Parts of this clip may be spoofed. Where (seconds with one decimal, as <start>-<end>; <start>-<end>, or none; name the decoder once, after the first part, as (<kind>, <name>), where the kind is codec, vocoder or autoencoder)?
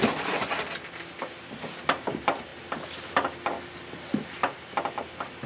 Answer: none